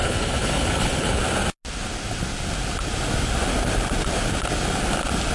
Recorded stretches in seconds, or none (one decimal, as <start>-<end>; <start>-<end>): 1.2-5.3